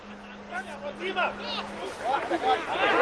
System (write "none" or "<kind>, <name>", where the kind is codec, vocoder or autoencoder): none